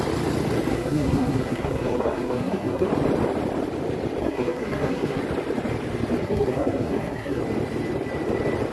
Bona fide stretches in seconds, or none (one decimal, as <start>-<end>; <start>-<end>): 0.0-0.7; 2.9-4.2; 5.2-6.2; 7.4-8.7